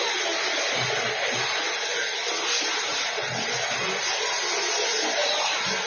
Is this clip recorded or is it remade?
recorded